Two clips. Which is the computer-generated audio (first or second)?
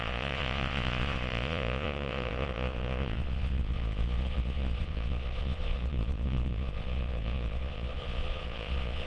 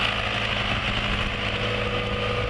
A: first